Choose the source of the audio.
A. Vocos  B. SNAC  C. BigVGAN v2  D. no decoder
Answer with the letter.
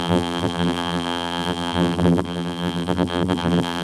C